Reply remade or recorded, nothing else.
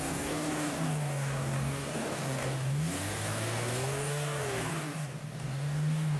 remade